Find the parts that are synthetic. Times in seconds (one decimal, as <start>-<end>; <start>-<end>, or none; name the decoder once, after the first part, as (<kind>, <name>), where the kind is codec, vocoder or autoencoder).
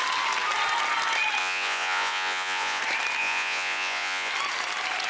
1.4-2.8 (vocoder, Vocos); 3.2-4.3